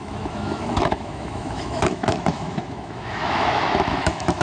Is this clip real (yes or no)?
no